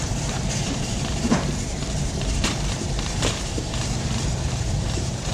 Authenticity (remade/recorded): remade